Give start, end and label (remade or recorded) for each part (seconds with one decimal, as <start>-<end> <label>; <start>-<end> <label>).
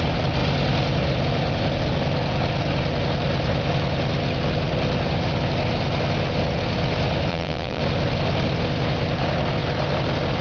0.0-7.3 recorded; 7.3-7.8 remade; 7.8-10.4 recorded